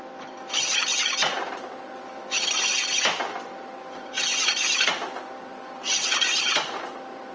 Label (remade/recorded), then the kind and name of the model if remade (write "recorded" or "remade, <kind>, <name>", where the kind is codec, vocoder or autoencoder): recorded